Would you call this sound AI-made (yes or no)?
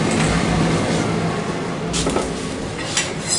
no